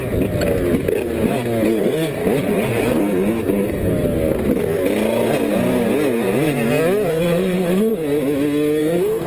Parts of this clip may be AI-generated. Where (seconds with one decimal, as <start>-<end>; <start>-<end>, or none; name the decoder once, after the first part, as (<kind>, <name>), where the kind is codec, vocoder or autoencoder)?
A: 1.8-2.2 (codec, SNAC); 3.0-3.9; 7.1-7.9; 8.8-9.3